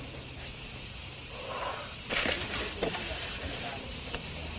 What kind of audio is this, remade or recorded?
remade